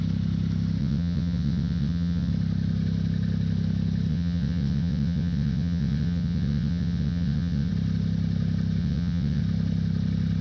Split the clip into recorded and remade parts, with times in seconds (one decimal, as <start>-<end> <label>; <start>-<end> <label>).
0.0-0.8 recorded; 0.8-2.3 remade; 2.3-4.1 recorded; 4.1-7.7 remade; 7.7-8.8 recorded; 8.8-9.4 remade; 9.4-10.4 recorded